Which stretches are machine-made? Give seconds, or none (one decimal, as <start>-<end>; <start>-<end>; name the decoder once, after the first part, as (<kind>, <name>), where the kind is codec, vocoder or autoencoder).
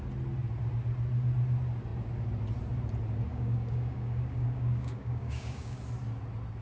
3.3-5.8 (codec, DAC)